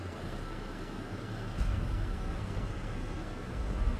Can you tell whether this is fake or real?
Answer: fake